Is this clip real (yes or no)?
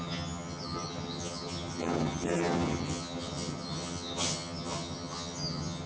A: no